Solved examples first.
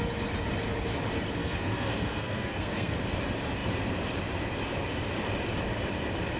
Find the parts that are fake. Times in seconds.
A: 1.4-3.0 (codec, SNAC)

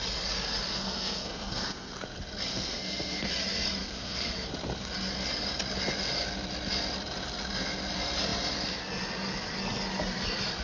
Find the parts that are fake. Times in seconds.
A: 0.7-1.9 (codec, SNAC); 2.5-3.3; 3.8-4.5

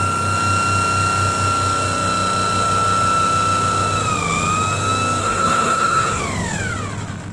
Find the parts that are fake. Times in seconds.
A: 5.2-6.2 (codec, SNAC)

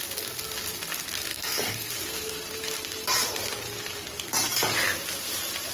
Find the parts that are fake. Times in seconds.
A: 1.3-1.9 (codec, SNAC)

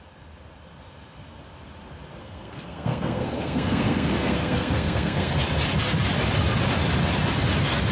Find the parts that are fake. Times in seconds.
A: 2.2-5.3 (codec, SNAC)

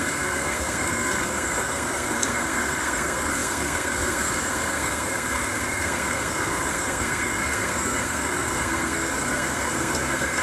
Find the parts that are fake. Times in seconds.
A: 0.0-10.4 (codec, SNAC)

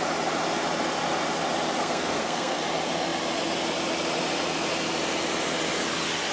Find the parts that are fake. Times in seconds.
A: 1.8-2.6 (codec, SNAC)

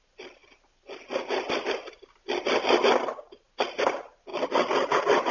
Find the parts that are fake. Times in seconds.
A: none